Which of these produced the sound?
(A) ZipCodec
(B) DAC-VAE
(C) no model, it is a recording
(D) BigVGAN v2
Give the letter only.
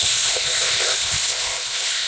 A